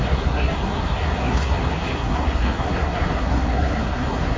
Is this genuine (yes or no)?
no